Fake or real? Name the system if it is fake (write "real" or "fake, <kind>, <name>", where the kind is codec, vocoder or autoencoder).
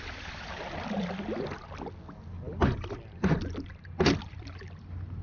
real